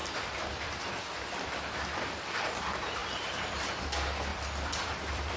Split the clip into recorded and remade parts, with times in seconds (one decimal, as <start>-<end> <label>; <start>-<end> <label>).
0.0-0.9 remade; 0.9-3.0 recorded; 3.0-3.8 remade; 3.8-4.3 recorded; 4.3-5.4 remade